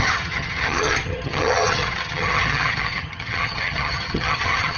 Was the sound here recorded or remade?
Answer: remade